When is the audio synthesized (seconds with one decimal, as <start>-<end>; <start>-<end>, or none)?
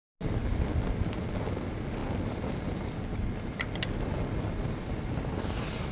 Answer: none